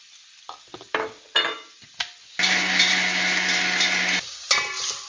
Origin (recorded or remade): recorded